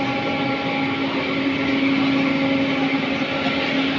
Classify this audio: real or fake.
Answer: real